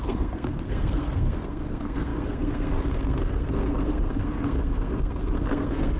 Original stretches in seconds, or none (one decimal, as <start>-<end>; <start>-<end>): none